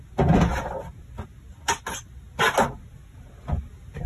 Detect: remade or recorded recorded